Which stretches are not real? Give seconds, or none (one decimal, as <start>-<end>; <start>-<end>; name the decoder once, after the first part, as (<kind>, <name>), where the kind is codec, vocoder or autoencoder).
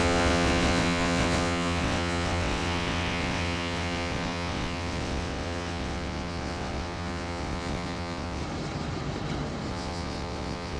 0.0-8.4 (vocoder, WaveNeXt); 9.7-10.8